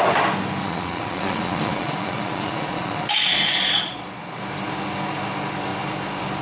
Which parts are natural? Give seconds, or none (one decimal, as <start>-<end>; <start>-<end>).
0.0-0.6; 4.4-6.4